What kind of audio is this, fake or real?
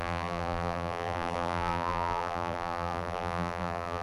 fake